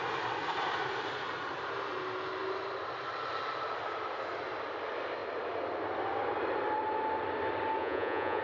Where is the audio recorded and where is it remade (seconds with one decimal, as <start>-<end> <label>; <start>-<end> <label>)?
0.0-7.8 recorded; 7.8-8.4 remade